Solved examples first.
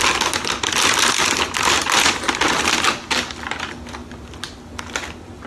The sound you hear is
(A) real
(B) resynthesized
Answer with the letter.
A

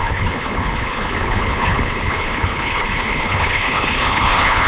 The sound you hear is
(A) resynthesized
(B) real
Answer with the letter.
A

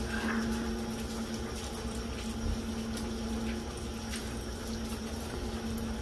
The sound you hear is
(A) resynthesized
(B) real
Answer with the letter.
B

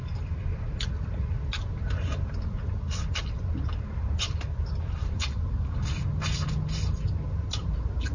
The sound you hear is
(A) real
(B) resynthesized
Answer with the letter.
A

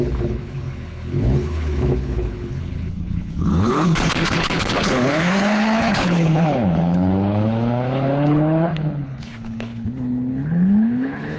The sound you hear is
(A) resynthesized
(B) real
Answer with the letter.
A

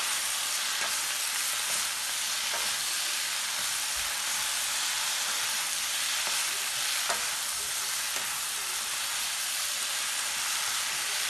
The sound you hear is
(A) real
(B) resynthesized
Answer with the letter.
A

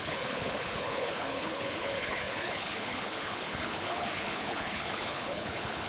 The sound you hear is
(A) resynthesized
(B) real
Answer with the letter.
A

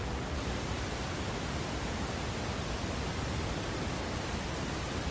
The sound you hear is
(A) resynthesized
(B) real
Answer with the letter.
B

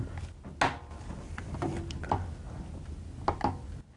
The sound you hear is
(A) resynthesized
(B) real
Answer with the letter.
B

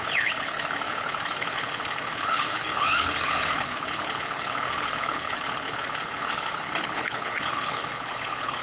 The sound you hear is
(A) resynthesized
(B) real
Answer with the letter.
A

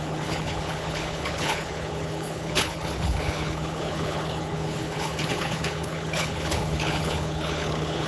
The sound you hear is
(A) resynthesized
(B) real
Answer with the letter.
A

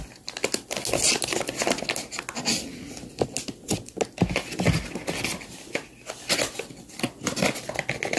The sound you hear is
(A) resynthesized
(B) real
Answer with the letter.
B